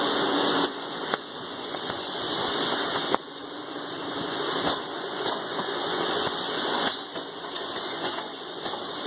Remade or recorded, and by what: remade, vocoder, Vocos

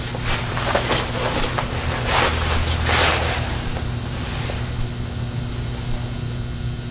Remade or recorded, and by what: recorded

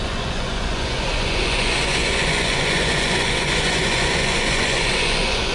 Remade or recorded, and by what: remade, vocoder, Vocos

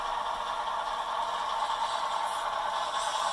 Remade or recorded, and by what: recorded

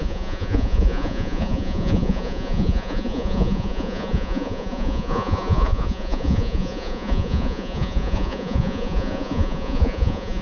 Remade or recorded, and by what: remade, vocoder, Vocos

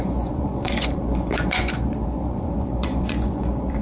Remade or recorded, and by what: remade, vocoder, Vocos